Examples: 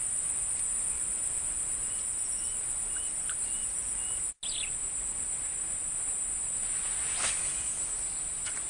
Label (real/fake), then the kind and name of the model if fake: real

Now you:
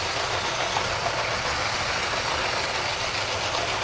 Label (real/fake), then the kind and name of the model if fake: real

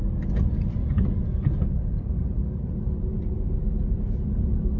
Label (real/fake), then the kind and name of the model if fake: real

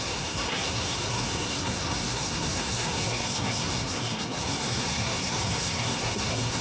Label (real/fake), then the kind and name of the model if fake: fake, codec, SNAC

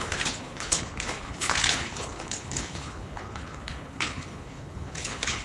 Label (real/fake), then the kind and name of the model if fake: fake, codec, HILCodec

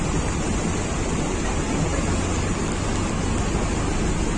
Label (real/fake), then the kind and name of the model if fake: real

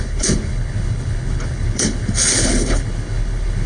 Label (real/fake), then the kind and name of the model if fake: fake, codec, HILCodec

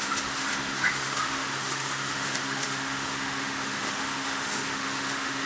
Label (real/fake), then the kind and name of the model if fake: fake, autoencoder, DAC-VAE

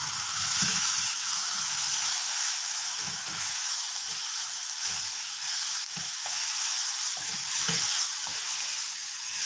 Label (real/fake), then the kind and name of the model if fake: fake, autoencoder, DAC-VAE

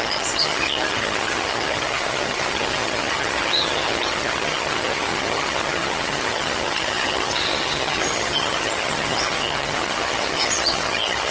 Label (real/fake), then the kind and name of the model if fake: fake, vocoder, HiFi-GAN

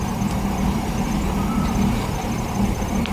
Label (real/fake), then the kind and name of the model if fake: real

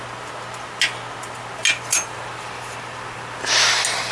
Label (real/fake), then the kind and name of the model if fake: real